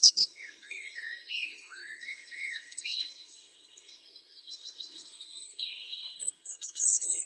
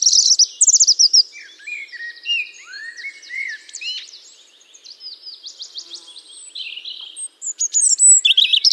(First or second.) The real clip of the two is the second